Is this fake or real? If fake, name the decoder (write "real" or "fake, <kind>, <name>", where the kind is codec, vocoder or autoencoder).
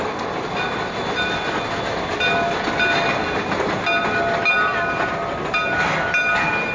real